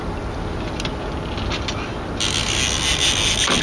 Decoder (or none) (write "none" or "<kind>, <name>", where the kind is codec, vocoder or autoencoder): none